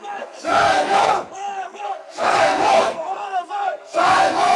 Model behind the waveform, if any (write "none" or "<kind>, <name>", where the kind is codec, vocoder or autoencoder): codec, SNAC